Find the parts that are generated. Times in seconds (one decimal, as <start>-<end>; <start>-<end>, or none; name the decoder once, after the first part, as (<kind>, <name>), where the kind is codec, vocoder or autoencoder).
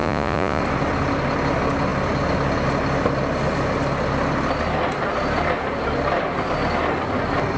0.0-0.6 (vocoder, Vocos)